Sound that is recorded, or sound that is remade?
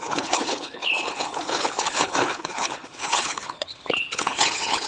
remade